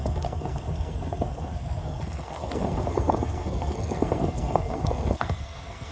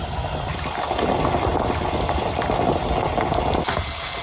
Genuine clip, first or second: second